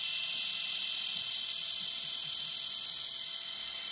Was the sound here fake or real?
real